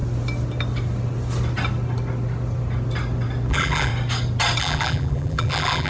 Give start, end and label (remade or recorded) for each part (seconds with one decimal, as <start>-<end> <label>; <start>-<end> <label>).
0.0-3.5 recorded; 3.5-3.9 remade; 3.9-4.6 recorded; 4.6-5.9 remade